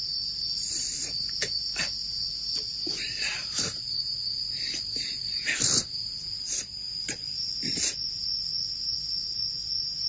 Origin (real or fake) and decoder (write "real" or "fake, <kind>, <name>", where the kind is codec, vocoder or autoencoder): real